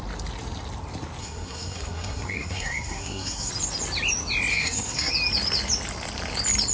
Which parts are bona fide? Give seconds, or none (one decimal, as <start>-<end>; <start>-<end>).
0.0-1.2; 3.5-4.5; 5.1-6.7